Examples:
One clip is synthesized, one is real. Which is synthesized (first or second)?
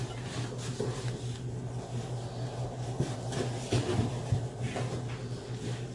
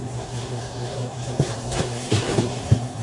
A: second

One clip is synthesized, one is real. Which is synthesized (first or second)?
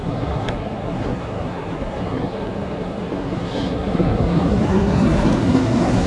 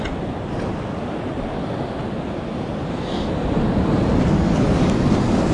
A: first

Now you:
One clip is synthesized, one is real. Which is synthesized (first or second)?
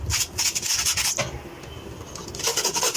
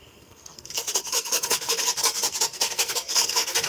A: second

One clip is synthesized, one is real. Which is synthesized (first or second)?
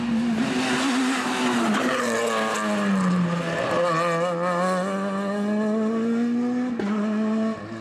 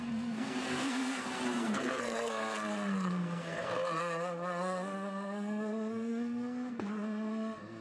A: second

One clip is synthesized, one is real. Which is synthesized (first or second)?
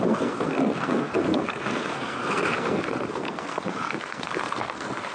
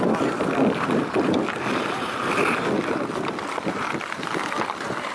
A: first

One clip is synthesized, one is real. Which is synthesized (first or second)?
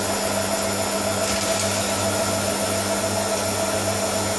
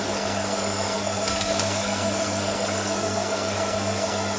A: second